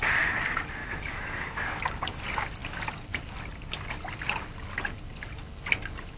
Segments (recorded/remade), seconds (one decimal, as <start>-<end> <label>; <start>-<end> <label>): 0.0-0.8 recorded; 0.8-1.8 remade; 1.8-6.2 recorded